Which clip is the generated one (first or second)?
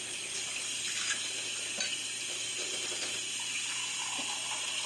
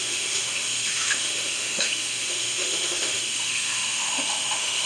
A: second